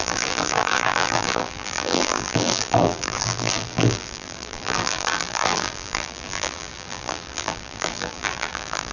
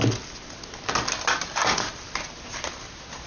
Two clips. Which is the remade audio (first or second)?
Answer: first